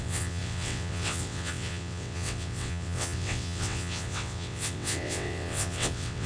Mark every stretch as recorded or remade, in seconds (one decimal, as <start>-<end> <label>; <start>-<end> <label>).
0.0-6.3 remade